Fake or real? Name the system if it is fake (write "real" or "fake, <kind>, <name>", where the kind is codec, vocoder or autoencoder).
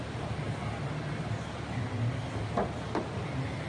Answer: real